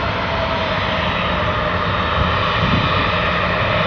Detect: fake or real real